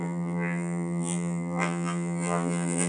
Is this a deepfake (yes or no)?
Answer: yes